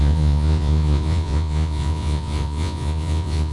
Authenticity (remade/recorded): remade